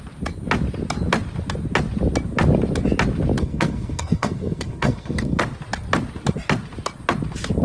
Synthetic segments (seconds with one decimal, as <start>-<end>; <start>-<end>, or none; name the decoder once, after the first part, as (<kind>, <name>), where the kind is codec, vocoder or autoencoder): 3.4-5.4 (codec, SNAC)